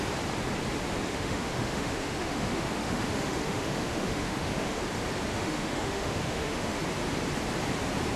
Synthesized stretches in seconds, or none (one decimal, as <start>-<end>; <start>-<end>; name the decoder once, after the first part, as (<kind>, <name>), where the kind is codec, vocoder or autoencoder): 1.1-4.8 (autoencoder, DAC-VAE); 5.3-6.8